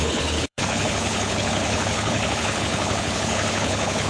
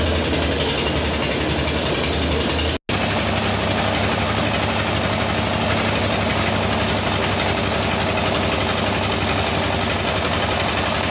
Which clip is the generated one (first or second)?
first